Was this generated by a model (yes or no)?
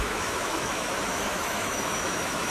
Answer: yes